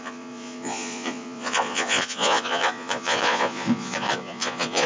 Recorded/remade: remade